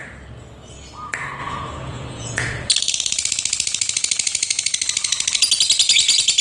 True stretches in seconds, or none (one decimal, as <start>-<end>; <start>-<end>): 0.0-1.4; 2.7-6.4